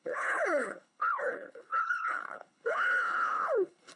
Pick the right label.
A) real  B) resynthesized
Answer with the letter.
B